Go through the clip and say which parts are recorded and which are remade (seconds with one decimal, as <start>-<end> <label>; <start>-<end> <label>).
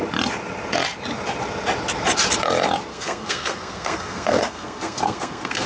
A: 0.0-2.9 recorded; 2.9-5.7 remade